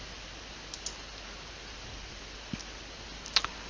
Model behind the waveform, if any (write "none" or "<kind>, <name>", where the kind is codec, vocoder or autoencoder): none